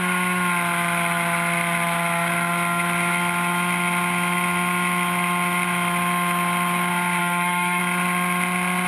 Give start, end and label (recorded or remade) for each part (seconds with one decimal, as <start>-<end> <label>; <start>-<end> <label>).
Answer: 0.0-7.2 recorded; 7.2-7.8 remade; 7.8-8.9 recorded